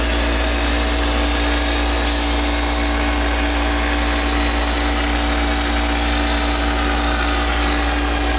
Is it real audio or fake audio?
real